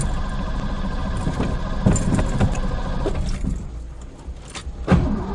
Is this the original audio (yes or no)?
yes